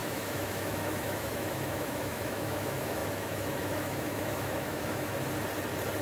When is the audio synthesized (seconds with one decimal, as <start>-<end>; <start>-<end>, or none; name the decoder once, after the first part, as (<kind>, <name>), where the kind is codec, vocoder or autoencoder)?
0.0-5.1 (autoencoder, DAC-VAE)